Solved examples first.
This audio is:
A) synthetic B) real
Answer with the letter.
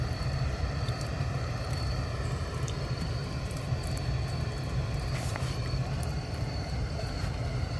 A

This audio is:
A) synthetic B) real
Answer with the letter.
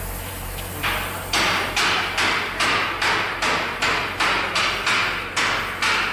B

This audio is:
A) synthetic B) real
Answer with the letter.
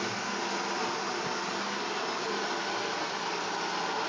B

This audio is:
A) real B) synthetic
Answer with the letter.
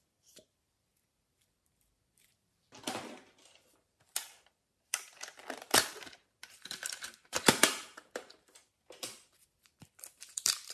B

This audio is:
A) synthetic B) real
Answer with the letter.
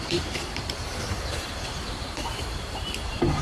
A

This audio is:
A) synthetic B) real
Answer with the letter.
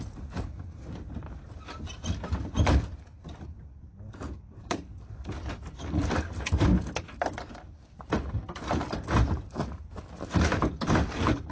A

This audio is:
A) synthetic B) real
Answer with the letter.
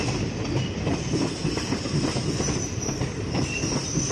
A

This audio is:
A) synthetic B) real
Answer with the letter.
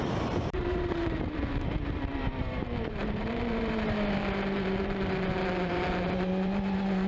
A